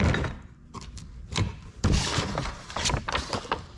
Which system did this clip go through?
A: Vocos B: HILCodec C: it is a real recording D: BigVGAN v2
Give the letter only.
D